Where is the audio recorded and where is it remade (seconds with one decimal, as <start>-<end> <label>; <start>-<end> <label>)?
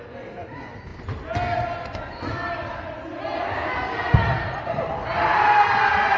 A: 0.0-6.2 recorded